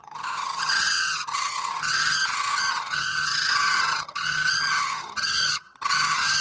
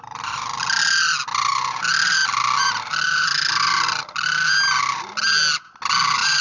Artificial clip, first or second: first